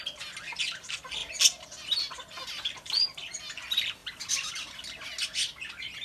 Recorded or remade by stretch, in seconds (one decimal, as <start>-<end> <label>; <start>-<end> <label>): 0.0-4.0 recorded; 4.0-4.5 remade; 4.5-6.0 recorded